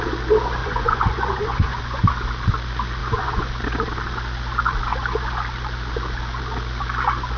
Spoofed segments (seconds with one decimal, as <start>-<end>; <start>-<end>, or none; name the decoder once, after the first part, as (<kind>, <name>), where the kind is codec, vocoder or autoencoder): 0.6-2.0 (vocoder, Vocos); 3.0-3.5